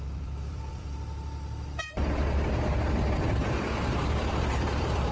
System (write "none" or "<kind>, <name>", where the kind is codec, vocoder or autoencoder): vocoder, BigVGAN v2